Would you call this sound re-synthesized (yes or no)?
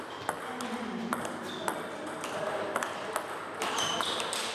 no